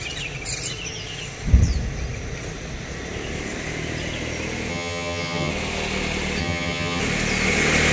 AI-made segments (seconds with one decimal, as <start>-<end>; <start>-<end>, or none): 4.7-5.5; 6.4-7.0